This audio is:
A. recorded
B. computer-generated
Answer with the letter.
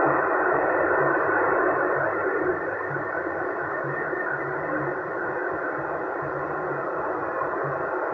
A